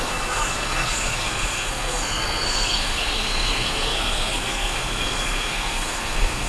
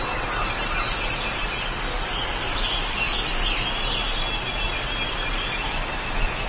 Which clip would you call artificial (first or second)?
first